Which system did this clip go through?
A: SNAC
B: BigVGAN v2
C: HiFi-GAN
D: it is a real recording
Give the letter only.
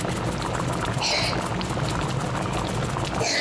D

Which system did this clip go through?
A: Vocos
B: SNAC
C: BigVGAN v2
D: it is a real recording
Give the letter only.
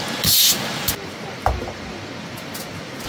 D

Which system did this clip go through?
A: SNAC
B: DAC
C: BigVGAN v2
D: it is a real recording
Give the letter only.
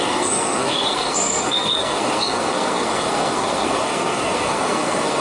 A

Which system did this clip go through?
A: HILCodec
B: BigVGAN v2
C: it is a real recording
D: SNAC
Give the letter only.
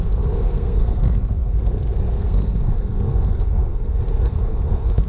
D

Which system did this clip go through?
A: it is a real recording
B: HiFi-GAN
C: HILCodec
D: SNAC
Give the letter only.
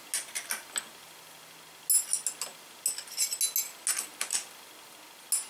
A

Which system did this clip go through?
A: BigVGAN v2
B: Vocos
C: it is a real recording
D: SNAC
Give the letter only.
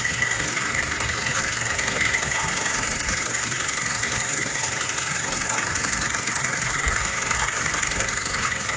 D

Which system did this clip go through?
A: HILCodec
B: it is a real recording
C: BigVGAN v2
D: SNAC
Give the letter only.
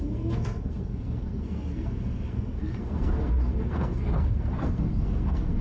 D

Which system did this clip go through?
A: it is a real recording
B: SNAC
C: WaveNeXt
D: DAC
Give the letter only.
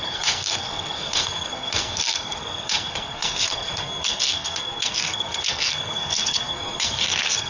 B